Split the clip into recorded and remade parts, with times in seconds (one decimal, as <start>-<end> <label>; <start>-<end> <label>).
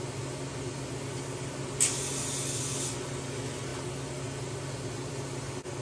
0.0-5.8 recorded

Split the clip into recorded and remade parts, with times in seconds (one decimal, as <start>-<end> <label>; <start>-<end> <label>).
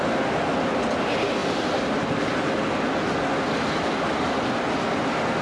0.0-5.4 recorded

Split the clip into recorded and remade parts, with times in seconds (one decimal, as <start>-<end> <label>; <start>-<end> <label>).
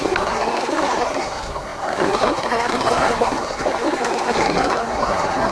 0.0-5.5 remade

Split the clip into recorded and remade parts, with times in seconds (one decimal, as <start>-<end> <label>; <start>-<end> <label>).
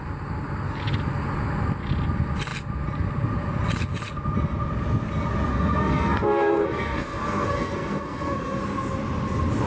0.0-5.5 recorded; 5.5-8.6 remade; 8.6-9.7 recorded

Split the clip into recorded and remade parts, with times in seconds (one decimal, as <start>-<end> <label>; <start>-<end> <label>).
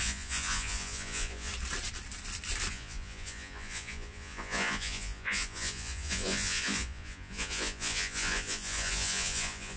0.0-1.5 remade; 1.5-2.7 recorded; 2.7-9.8 remade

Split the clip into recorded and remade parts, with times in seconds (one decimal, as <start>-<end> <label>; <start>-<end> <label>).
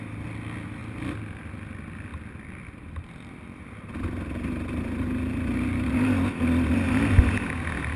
0.0-8.0 recorded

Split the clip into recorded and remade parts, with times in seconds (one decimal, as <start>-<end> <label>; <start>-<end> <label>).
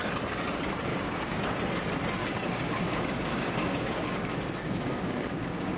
0.0-0.9 recorded; 0.9-1.4 remade; 1.4-2.2 recorded; 2.2-5.8 remade